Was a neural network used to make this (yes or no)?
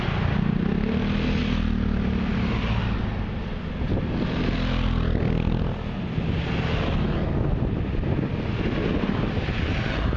no